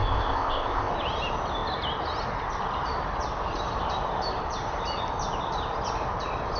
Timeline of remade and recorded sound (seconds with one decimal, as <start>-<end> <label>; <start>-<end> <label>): 0.0-0.9 remade; 0.9-6.6 recorded